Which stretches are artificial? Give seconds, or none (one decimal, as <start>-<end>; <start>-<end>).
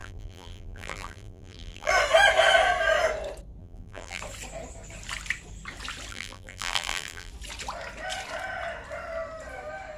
0.0-1.9; 3.6-4.2; 6.1-7.3